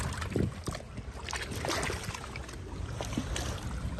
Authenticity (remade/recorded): recorded